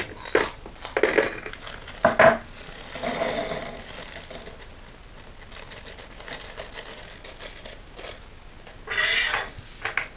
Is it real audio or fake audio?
real